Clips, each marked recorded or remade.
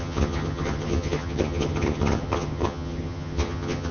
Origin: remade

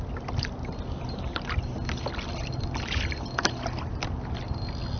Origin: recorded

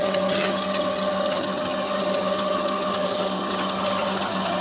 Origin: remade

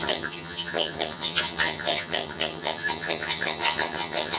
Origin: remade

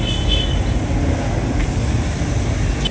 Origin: recorded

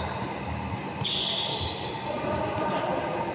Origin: recorded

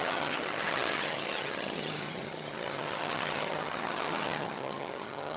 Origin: remade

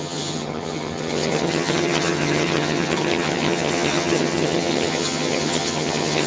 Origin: remade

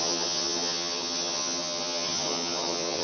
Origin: remade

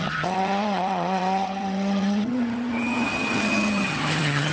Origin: remade